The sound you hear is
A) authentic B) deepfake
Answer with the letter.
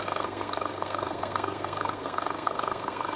B